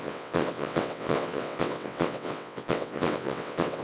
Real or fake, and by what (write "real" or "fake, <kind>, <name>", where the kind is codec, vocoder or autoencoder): fake, vocoder, WaveNeXt